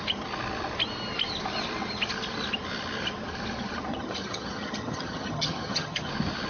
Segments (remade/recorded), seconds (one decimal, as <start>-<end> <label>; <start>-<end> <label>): 0.0-3.9 recorded; 3.9-6.1 remade; 6.1-6.5 recorded